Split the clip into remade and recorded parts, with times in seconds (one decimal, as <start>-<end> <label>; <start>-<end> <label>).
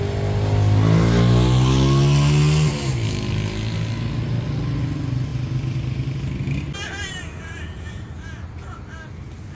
0.0-9.5 recorded